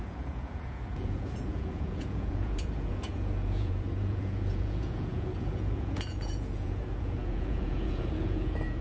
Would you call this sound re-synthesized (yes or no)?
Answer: yes